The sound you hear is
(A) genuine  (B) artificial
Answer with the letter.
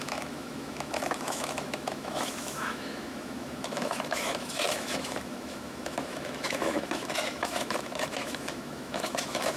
B